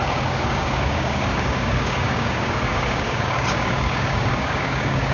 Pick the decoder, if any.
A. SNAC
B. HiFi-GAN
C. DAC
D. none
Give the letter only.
C